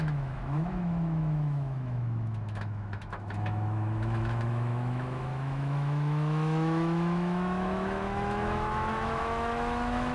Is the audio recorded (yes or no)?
no